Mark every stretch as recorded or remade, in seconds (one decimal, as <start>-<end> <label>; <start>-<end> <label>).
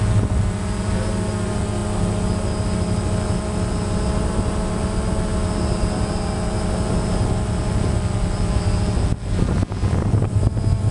0.0-10.9 recorded